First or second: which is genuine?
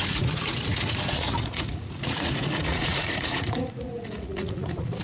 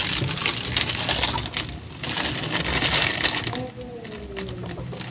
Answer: second